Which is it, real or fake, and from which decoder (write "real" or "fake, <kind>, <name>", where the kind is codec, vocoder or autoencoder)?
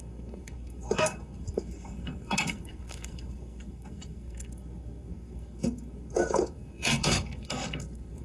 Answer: fake, codec, SNAC